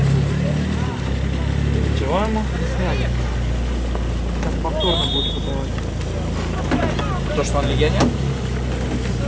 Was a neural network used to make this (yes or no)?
no